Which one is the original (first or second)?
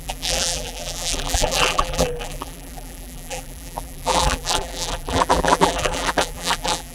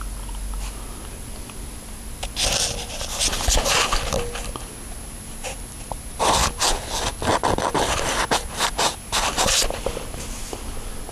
second